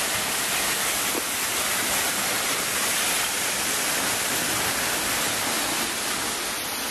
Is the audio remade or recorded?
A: recorded